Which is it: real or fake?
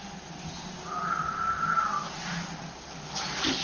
real